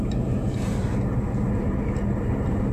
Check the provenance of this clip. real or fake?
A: real